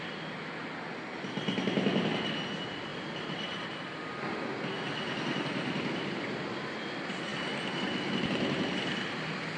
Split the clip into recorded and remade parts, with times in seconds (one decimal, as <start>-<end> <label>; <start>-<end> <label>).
0.0-9.6 recorded